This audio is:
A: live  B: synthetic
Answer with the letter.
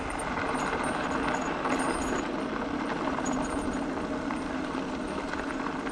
A